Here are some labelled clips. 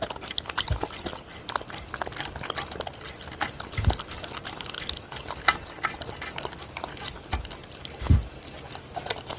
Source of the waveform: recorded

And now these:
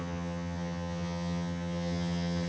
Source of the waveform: remade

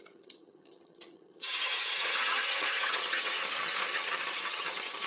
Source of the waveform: remade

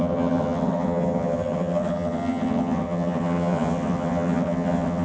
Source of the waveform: remade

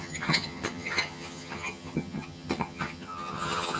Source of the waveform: remade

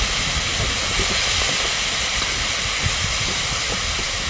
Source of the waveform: recorded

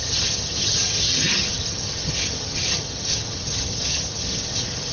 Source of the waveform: remade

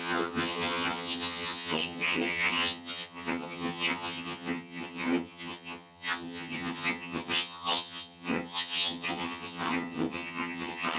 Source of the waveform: remade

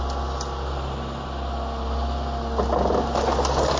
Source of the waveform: recorded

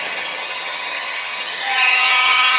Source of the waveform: remade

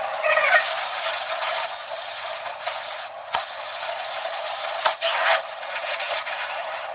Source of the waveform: remade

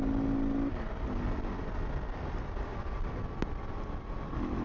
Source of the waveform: recorded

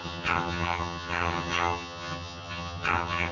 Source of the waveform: remade